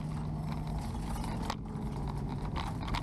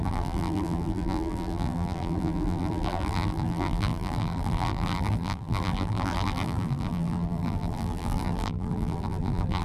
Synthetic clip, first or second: second